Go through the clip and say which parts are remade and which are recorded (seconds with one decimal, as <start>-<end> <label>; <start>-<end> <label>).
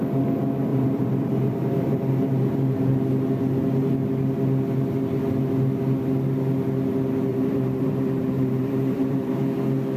0.0-0.7 recorded; 0.7-2.9 remade; 2.9-7.3 recorded; 7.3-9.4 remade; 9.4-10.0 recorded